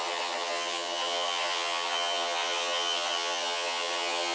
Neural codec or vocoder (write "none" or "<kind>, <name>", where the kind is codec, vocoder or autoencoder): vocoder, HiFi-GAN